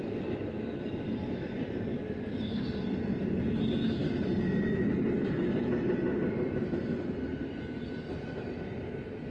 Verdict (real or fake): real